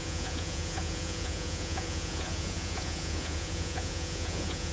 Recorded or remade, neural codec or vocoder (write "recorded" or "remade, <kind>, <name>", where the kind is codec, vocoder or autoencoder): remade, vocoder, Vocos